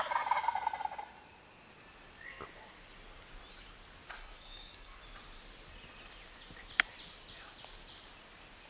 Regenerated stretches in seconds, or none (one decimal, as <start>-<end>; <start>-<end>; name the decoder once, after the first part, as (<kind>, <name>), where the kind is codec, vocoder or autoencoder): 4.2-5.0 (codec, DAC)